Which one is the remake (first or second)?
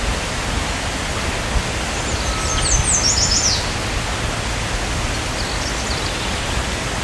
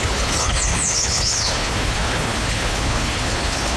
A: second